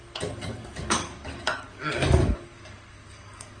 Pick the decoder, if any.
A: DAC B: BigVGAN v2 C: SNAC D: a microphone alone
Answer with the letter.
A